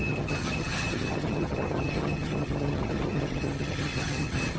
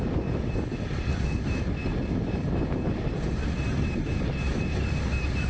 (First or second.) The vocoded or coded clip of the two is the first